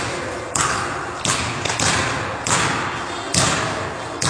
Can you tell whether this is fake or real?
real